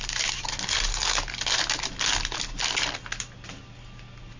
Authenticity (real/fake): real